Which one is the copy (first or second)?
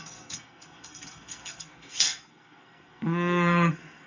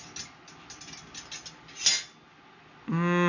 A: first